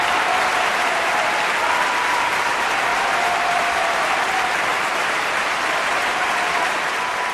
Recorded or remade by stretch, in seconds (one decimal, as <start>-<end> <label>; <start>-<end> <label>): 0.0-0.5 recorded; 0.5-1.2 remade; 1.2-2.9 recorded; 2.9-4.2 remade; 4.2-4.7 recorded; 4.7-6.3 remade; 6.3-7.3 recorded